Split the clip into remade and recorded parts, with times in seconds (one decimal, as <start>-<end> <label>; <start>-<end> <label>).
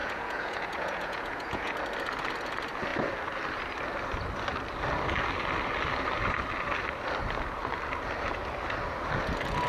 0.0-1.7 remade; 1.7-9.7 recorded